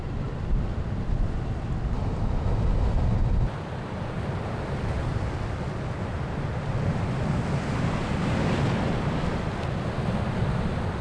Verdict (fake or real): real